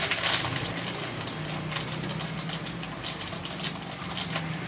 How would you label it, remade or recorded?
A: recorded